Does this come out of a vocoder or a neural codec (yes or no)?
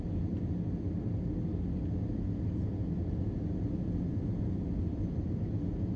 no